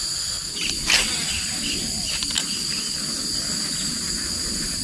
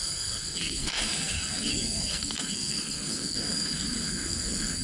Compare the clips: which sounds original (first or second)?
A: first